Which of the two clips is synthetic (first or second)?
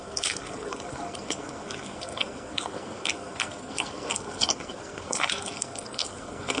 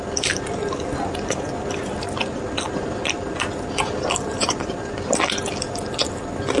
first